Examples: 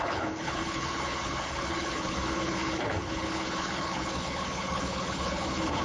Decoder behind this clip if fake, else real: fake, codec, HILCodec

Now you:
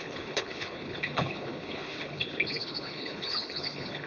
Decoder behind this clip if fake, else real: fake, codec, HILCodec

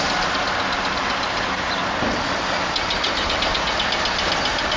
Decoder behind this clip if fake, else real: real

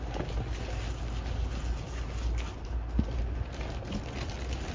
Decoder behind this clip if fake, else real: real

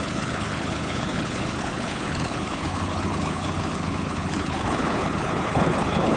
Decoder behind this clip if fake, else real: fake, codec, HILCodec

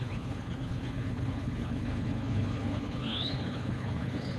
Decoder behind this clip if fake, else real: fake, codec, HILCodec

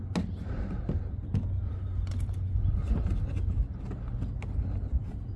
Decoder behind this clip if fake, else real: real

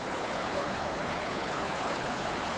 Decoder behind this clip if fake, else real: fake, codec, HILCodec